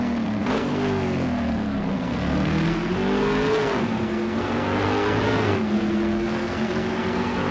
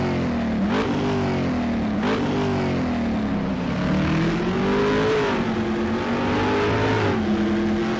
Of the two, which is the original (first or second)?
second